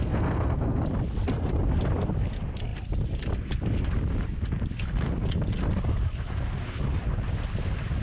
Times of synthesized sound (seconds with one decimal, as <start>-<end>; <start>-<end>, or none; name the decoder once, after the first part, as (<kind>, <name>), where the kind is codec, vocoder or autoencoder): 0.0-0.8 (codec, SNAC)